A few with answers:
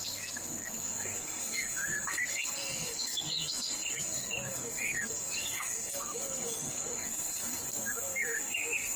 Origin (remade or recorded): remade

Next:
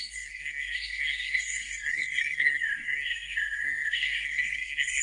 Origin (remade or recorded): remade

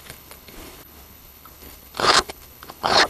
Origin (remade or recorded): remade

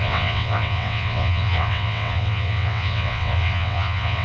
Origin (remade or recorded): remade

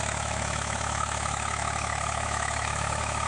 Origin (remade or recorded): remade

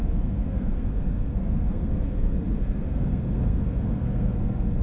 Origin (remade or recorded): remade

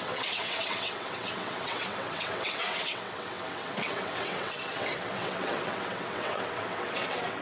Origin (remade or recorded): remade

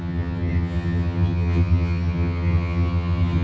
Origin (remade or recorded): remade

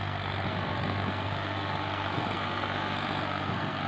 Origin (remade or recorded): remade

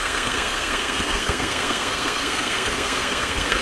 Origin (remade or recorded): remade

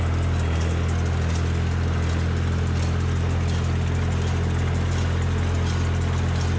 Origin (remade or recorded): recorded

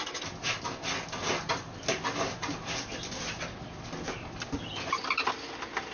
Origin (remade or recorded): recorded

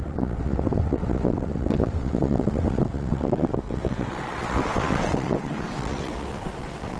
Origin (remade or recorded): remade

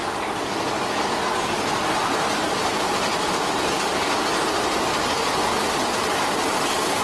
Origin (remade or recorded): recorded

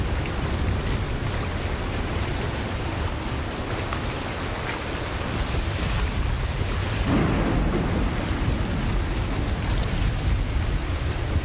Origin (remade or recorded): recorded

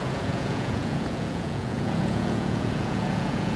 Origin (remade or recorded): remade